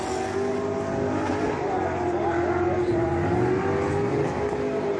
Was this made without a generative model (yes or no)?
yes